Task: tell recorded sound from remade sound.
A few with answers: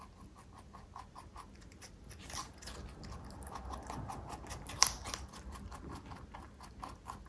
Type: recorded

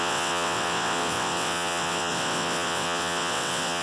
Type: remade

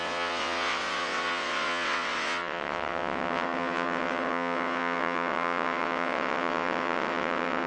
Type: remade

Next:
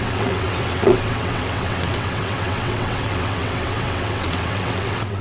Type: remade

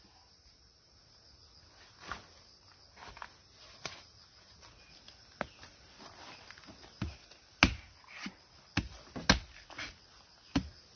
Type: recorded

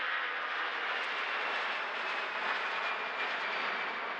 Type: recorded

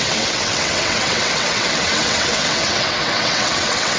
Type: remade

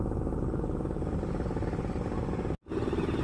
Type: recorded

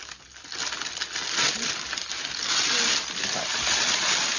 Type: recorded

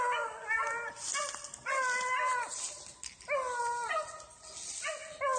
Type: recorded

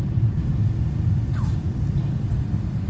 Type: recorded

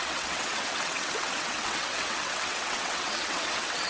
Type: remade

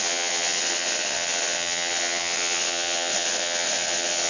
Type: remade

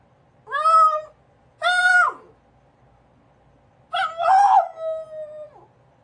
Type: recorded